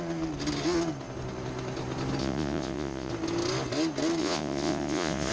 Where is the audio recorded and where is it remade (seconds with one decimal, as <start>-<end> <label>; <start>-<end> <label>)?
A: 0.0-2.2 recorded; 2.2-3.1 remade; 3.1-4.2 recorded; 4.2-5.3 remade